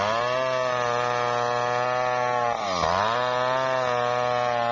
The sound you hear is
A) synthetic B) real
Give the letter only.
B